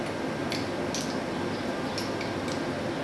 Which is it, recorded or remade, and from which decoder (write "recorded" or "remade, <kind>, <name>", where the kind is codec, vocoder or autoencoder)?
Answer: recorded